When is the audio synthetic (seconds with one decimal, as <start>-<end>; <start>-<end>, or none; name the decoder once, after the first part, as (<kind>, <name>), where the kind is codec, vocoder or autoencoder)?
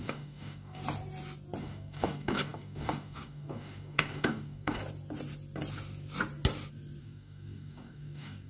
0.0-0.8 (codec, DAC); 1.6-4.8; 7.0-8.5